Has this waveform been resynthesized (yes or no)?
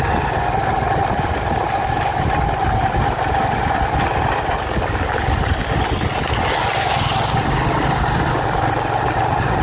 no